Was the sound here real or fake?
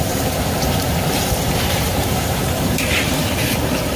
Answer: fake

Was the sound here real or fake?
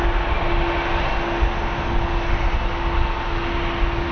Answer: real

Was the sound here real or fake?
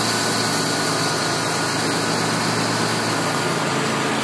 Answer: real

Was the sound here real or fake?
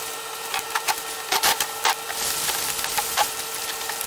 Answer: fake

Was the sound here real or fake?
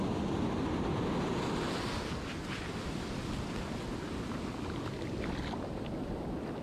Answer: real